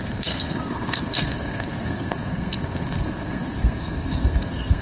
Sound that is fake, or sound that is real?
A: fake